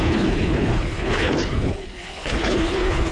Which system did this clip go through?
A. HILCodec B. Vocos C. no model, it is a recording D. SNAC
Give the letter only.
A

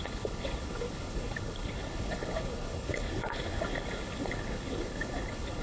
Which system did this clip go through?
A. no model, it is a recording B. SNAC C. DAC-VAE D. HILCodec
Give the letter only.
D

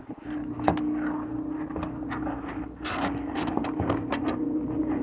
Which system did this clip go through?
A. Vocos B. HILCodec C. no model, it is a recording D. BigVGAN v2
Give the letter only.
C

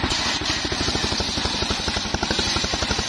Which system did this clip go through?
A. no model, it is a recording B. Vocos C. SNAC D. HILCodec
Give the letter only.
A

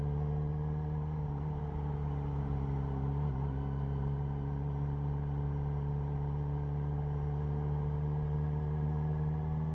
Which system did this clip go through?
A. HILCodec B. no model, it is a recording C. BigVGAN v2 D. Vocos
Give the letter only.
B